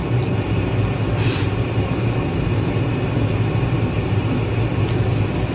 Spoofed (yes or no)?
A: no